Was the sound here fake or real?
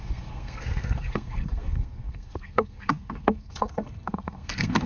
fake